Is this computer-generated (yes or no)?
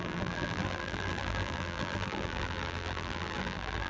yes